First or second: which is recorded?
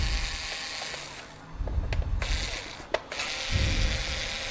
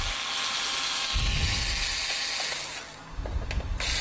first